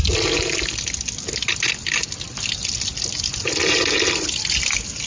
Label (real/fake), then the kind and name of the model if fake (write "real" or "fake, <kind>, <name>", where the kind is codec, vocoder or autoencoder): real